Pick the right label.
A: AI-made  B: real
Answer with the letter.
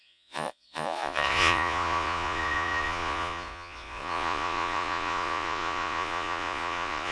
A